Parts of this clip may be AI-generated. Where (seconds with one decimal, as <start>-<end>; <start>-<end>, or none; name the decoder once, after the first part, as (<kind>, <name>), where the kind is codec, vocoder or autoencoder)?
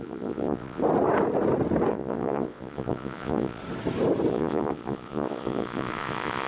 0.0-0.8 (vocoder, Vocos); 1.9-3.6; 4.3-6.5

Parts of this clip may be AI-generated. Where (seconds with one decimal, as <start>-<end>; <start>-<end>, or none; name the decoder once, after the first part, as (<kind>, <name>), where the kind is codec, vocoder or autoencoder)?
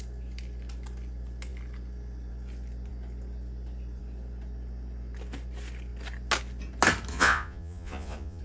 7.1-8.4 (vocoder, Vocos)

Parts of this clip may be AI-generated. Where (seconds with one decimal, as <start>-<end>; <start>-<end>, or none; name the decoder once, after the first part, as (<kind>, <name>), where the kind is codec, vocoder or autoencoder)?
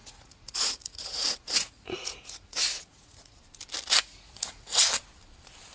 0.0-3.4 (vocoder, Vocos); 4.0-4.8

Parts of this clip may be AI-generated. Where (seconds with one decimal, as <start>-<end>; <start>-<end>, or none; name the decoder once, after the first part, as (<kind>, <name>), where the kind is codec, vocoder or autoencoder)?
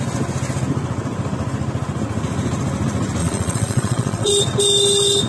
3.2-4.3 (vocoder, Vocos)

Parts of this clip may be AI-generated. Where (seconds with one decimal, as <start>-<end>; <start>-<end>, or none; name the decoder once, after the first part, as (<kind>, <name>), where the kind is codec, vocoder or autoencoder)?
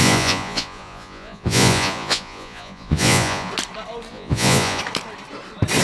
0.0-3.5 (vocoder, Vocos); 4.1-4.8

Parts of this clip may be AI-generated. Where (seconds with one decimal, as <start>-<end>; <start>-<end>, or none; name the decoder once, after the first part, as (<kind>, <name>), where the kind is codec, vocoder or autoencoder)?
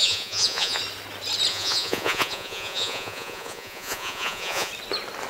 0.0-0.8 (vocoder, Vocos); 1.5-4.7